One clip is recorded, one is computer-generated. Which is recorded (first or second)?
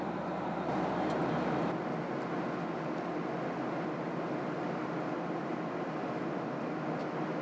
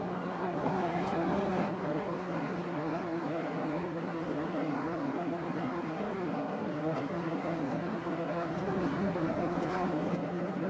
first